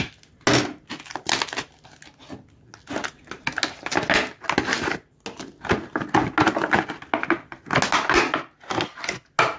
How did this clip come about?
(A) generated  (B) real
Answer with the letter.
B